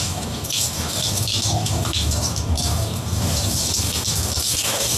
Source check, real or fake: fake